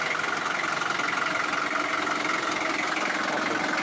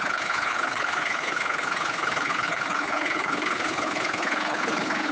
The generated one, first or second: second